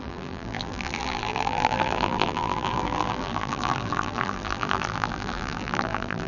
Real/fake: fake